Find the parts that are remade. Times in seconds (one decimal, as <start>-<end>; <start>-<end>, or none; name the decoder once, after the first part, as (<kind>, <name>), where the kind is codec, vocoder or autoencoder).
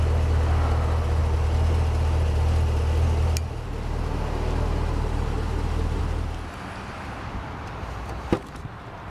none